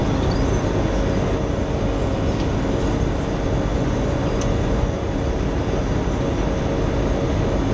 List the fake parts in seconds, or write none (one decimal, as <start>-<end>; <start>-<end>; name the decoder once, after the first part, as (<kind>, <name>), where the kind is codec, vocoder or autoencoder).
3.7-5.0 (vocoder, Vocos)